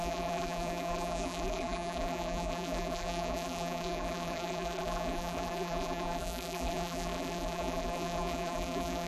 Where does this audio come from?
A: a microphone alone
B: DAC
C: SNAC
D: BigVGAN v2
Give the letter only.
D